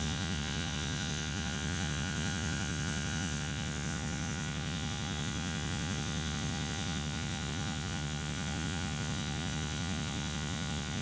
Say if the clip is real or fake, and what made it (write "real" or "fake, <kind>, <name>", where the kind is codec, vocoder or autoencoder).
fake, vocoder, Vocos